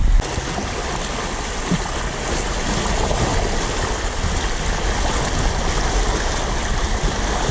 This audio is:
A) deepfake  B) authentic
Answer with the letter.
B